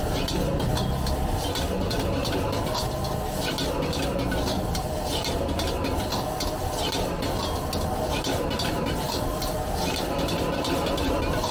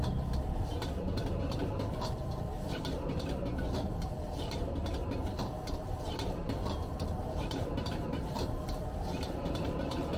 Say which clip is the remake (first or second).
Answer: second